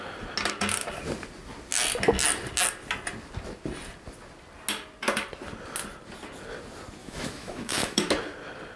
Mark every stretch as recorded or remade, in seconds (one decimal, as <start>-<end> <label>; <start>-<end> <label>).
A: 0.0-7.0 recorded; 7.0-8.1 remade; 8.1-8.8 recorded